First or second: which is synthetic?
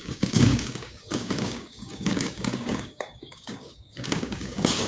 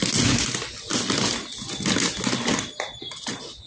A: first